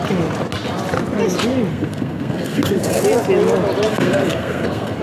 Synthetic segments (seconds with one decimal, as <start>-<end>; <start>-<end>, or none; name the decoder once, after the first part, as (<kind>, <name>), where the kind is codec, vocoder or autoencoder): 1.7-3.0 (codec, SNAC); 3.9-5.0